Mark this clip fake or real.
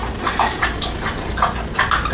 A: real